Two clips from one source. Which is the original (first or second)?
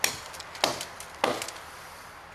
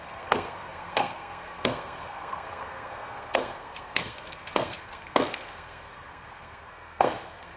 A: first